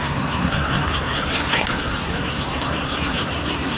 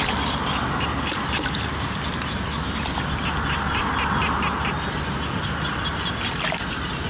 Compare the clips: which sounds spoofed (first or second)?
first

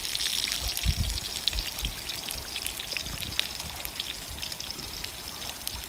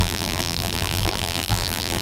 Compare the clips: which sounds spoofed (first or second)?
second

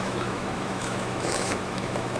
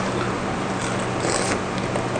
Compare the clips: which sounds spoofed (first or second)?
first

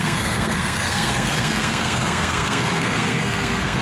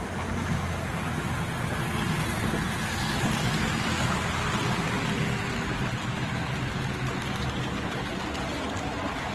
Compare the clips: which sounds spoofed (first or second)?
first